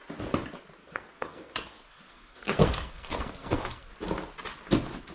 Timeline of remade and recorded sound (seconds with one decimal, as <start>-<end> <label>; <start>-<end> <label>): 0.0-0.8 recorded; 0.8-3.9 remade; 3.9-5.1 recorded